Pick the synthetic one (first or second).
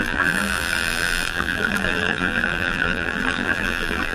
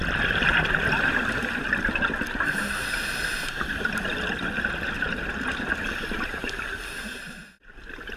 first